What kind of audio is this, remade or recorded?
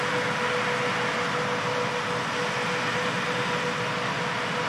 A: recorded